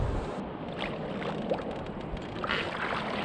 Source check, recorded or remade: remade